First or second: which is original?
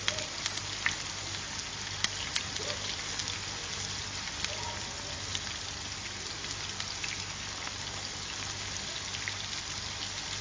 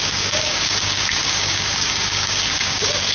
first